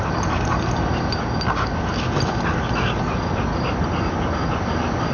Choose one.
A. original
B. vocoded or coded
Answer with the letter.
A